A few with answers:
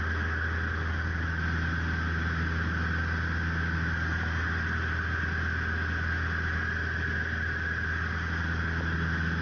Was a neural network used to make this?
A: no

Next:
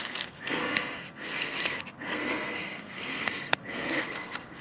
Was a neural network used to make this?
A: yes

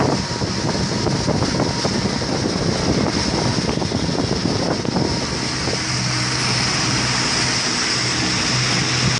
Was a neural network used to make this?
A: no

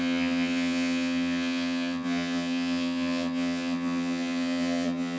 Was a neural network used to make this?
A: yes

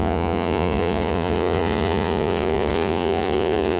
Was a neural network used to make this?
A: yes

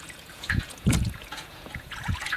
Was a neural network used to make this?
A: yes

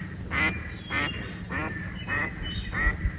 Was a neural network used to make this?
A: no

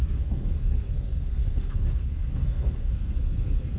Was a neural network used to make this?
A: yes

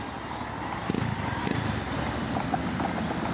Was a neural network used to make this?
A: no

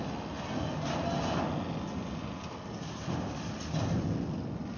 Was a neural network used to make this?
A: no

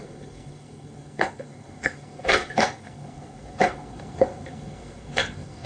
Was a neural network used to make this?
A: yes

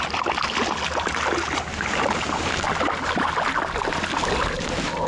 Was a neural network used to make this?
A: no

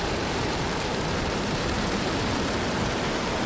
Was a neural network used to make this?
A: yes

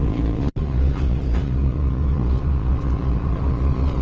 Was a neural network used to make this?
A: yes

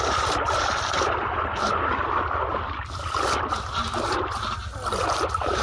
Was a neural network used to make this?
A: no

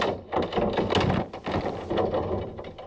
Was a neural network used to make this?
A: no